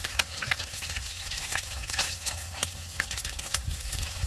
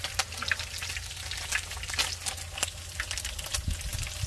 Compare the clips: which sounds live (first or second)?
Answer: second